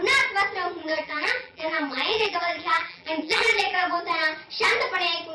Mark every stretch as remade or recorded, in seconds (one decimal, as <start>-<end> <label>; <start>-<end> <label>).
0.0-0.8 recorded; 0.8-4.0 remade; 4.0-5.3 recorded

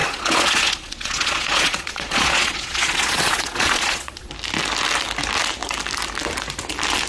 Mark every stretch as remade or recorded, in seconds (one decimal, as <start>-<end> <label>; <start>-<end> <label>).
0.0-4.3 remade; 4.3-7.1 recorded

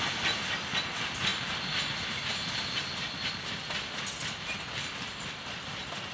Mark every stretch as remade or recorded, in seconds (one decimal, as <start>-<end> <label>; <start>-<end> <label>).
0.0-1.3 recorded; 1.3-2.8 remade; 2.8-6.1 recorded

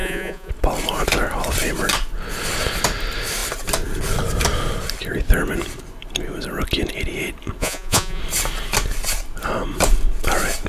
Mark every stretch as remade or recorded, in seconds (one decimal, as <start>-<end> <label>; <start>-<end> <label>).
0.0-0.5 remade; 0.5-7.6 recorded; 7.6-8.2 remade; 8.2-10.7 recorded

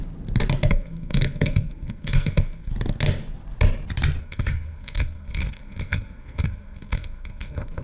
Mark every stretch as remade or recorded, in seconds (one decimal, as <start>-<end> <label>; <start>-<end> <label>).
0.0-0.7 recorded; 0.7-2.7 remade; 2.7-4.2 recorded; 4.2-7.8 remade